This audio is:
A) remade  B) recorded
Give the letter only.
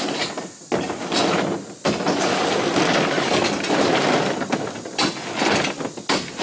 B